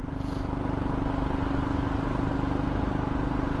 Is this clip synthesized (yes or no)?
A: no